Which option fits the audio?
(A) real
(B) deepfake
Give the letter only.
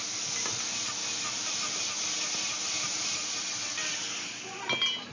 A